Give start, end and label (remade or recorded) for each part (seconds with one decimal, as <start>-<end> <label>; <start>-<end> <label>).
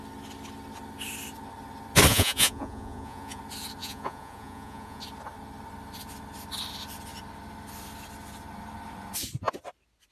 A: 0.0-2.1 recorded; 2.1-3.4 remade; 3.4-3.8 recorded; 3.8-5.0 remade; 5.0-10.1 recorded